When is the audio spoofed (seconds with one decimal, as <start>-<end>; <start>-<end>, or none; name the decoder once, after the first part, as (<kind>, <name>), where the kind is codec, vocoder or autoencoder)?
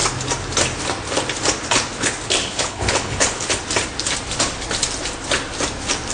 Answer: 2.4-3.6 (codec, HILCodec)